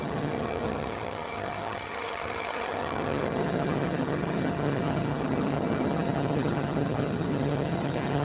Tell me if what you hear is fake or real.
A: fake